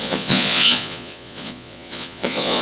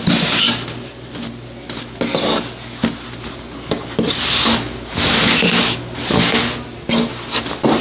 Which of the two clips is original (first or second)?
second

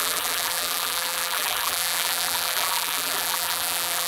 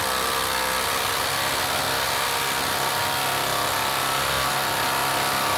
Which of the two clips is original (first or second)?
second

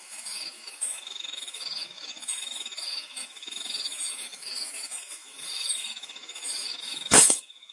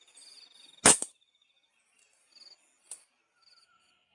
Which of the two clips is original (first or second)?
second